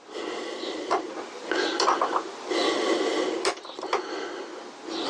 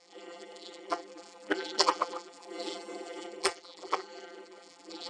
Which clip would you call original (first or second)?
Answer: first